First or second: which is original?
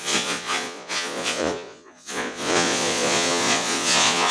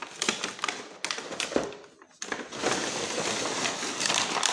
second